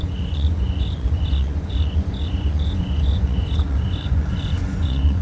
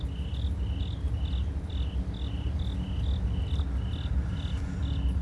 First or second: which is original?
second